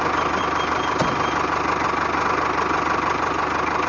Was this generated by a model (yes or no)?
no